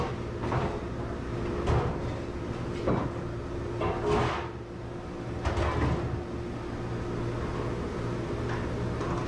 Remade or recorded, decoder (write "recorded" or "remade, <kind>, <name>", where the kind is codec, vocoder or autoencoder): recorded